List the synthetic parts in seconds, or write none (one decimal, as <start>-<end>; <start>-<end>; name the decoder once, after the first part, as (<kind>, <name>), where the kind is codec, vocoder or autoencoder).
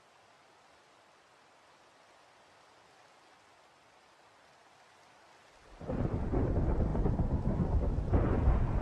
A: none